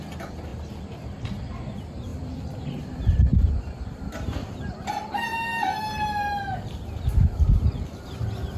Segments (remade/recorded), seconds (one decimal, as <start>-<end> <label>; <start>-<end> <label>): 0.0-0.5 recorded; 0.5-1.6 remade; 1.6-2.1 recorded; 2.1-3.5 remade; 3.5-8.6 recorded